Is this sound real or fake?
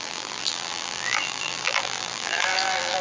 fake